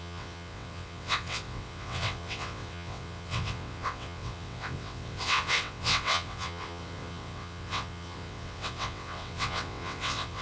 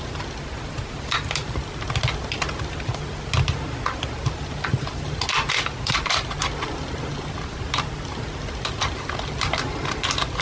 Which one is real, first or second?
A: second